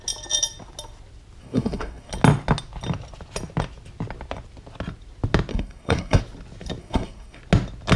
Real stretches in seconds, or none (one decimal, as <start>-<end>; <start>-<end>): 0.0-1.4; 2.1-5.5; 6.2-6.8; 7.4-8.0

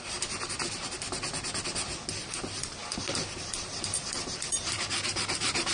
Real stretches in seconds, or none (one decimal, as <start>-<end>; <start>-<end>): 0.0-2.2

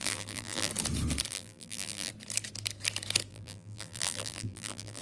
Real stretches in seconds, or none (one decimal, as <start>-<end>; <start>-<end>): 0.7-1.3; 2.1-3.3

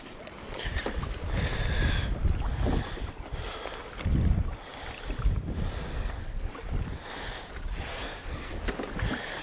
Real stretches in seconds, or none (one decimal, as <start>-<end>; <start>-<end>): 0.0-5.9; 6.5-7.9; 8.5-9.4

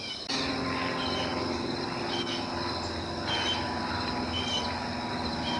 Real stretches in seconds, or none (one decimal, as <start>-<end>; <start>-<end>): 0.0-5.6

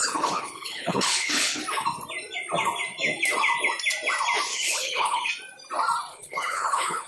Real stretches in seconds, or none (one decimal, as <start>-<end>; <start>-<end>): 1.6-4.5; 5.3-6.1

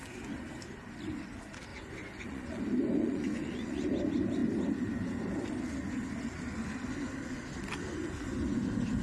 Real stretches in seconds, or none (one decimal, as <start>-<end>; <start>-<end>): 0.0-1.7; 2.6-3.0; 3.9-9.0